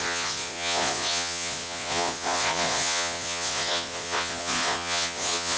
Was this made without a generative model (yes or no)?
no